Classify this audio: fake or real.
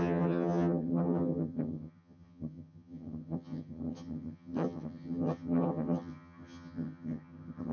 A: fake